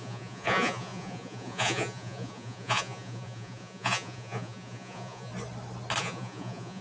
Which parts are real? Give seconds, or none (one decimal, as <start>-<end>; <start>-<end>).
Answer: 5.3-6.0